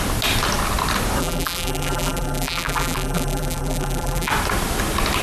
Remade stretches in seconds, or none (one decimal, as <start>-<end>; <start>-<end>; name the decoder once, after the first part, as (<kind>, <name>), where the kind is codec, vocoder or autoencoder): 1.2-4.3 (vocoder, BigVGAN v2)